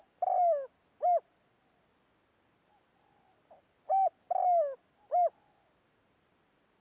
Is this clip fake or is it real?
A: real